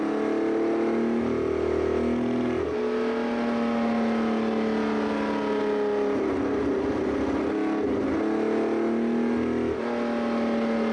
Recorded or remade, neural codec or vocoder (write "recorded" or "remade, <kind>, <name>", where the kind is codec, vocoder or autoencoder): recorded